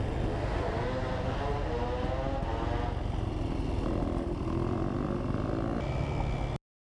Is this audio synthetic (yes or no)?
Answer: no